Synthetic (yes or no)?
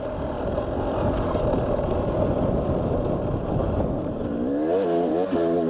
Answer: no